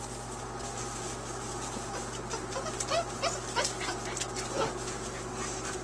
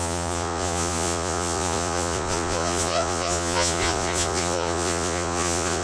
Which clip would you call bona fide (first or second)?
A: first